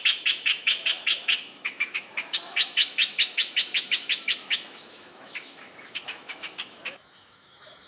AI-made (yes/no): yes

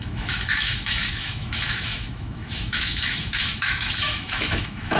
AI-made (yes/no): yes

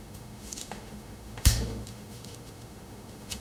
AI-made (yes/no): yes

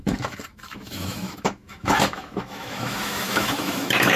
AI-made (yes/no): yes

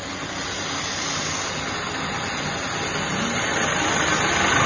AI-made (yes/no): no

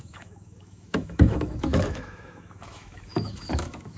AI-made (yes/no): yes